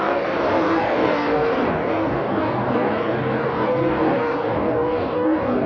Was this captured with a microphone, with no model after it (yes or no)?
no